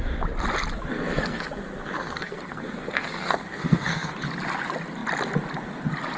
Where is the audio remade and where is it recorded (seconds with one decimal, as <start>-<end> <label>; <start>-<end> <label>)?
0.0-0.9 recorded; 0.9-4.1 remade; 4.1-6.2 recorded

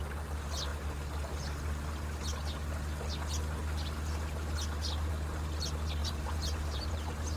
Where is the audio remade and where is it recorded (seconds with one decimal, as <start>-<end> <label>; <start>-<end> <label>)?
0.0-6.0 recorded; 6.0-7.4 remade